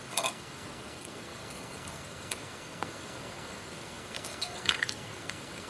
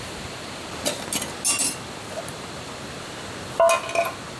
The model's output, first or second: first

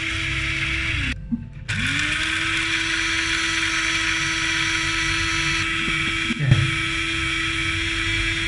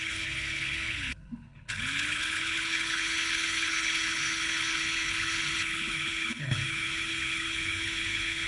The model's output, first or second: second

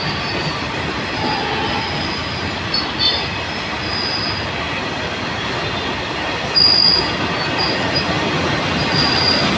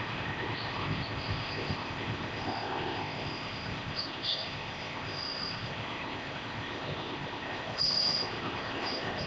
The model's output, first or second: second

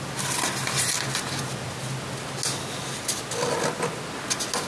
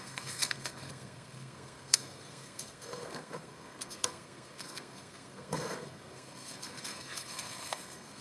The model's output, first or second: second